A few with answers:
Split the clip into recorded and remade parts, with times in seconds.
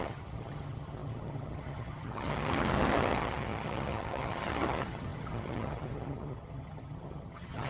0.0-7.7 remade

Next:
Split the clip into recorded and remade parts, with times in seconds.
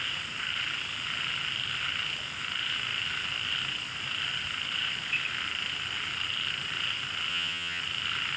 0.0-7.3 recorded; 7.3-7.8 remade; 7.8-8.4 recorded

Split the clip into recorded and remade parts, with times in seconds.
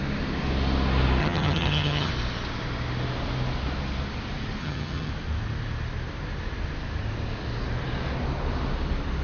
0.0-1.2 recorded; 1.2-2.1 remade; 2.1-4.6 recorded; 4.6-5.1 remade; 5.1-9.2 recorded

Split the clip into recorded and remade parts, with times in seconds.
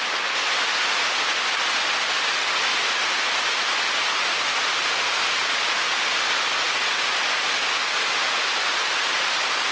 0.0-9.7 recorded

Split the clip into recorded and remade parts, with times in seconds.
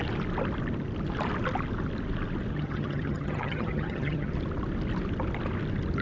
0.0-2.5 recorded; 2.5-4.3 remade; 4.3-6.0 recorded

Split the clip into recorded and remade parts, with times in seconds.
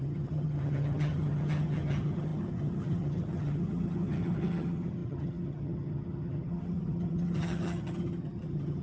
0.0-8.8 remade